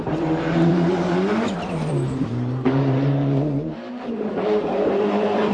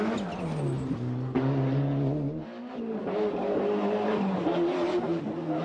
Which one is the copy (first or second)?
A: first